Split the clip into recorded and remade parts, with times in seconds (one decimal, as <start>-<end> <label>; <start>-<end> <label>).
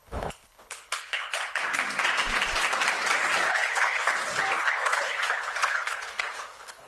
0.0-1.6 remade; 1.6-3.5 recorded; 3.5-4.1 remade; 4.1-4.6 recorded; 4.6-6.9 remade